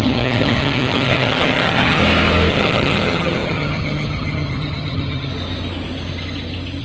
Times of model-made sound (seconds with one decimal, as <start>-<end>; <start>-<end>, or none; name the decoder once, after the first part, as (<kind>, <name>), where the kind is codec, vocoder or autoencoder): 0.0-2.0 (vocoder, HiFi-GAN); 2.5-5.3